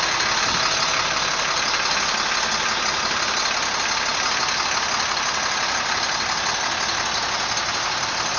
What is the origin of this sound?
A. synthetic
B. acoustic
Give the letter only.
B